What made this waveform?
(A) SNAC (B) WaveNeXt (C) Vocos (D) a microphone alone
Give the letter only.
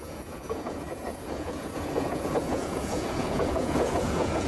C